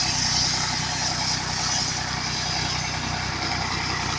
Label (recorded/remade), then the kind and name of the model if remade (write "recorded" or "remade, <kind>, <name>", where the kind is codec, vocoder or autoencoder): recorded